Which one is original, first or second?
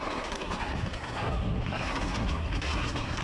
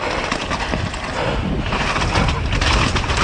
second